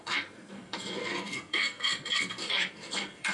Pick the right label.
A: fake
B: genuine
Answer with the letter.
A